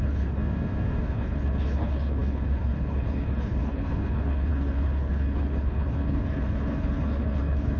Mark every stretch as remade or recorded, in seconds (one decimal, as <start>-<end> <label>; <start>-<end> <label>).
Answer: 0.0-0.4 remade; 0.4-1.0 recorded; 1.0-7.8 remade

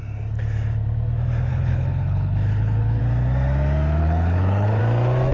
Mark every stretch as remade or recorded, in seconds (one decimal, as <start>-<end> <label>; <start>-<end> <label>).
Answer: 0.0-1.5 recorded; 1.5-3.0 remade; 3.0-4.0 recorded; 4.0-4.8 remade; 4.8-5.3 recorded

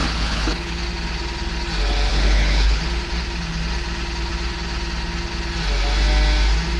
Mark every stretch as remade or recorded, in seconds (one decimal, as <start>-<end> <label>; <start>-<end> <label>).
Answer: 0.0-0.8 remade; 0.8-2.1 recorded; 2.1-2.8 remade; 2.8-6.8 recorded

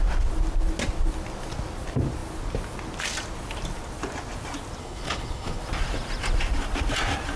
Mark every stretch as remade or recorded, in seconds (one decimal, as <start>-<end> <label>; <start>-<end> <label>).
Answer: 0.0-4.8 recorded; 4.8-5.6 remade; 5.6-7.4 recorded

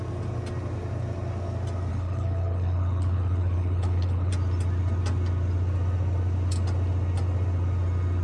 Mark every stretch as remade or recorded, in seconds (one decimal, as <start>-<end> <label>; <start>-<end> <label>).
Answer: 0.0-1.9 recorded; 1.9-4.3 remade; 4.3-8.2 recorded

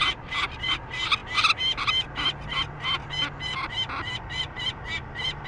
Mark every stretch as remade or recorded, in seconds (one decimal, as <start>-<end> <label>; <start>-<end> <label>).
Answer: 0.0-5.5 recorded

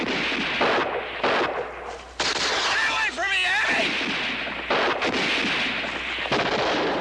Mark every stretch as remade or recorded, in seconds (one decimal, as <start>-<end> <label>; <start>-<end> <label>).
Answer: 0.0-7.0 recorded

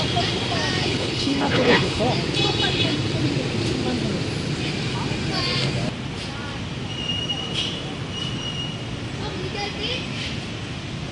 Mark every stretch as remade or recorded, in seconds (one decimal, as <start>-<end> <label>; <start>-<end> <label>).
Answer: 0.0-0.8 recorded; 0.8-2.0 remade; 2.0-11.1 recorded